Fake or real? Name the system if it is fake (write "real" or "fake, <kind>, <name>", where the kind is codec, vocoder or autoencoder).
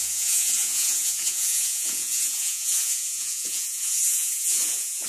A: fake, vocoder, Vocos